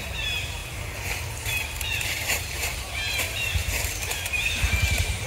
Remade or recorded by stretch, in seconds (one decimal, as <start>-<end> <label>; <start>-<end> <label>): 0.0-0.6 remade; 0.6-1.9 recorded; 1.9-5.3 remade